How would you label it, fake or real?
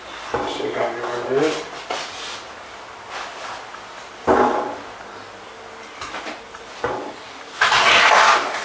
real